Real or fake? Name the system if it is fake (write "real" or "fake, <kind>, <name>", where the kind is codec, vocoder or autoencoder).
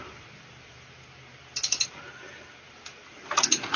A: real